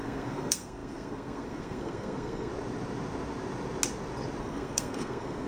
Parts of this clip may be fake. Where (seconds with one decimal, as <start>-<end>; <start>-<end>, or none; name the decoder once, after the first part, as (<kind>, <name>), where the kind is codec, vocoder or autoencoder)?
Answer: 0.0-2.5 (codec, SNAC); 4.4-5.5